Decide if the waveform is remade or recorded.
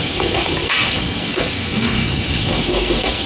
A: remade